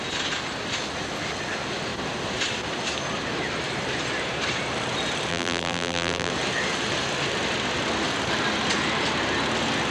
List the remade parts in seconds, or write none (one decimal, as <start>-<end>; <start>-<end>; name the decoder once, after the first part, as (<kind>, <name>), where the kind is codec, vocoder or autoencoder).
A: 5.3-6.3 (vocoder, BigVGAN v2)